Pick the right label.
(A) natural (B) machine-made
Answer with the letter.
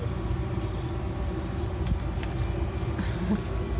A